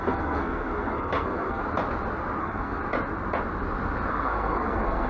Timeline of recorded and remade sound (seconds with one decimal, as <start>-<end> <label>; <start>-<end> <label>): 0.0-1.6 remade; 1.6-2.4 recorded; 2.4-2.8 remade; 2.8-4.1 recorded; 4.1-5.1 remade